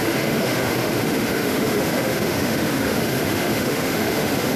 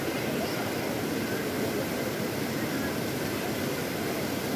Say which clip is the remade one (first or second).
first